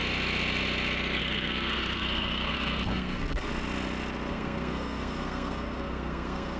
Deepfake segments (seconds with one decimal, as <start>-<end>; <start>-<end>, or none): 1.2-3.5; 4.3-6.6